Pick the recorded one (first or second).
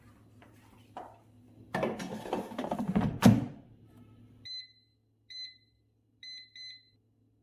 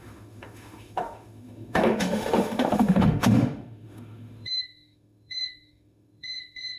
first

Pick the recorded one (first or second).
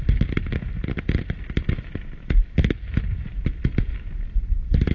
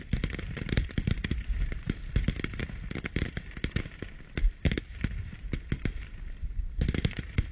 first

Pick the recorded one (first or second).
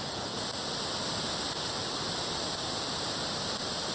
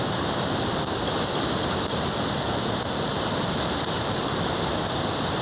first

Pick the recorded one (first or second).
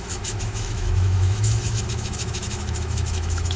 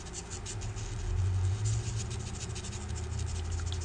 second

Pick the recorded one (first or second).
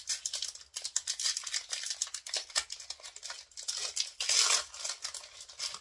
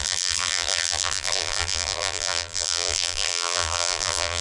first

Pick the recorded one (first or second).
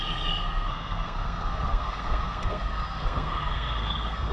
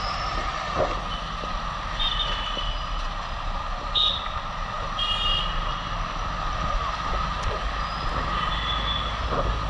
second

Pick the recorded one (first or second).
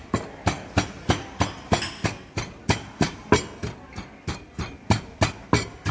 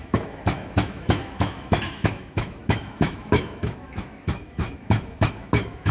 first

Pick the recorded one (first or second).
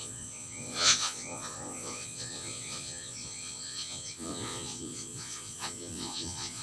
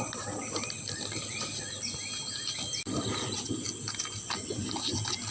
second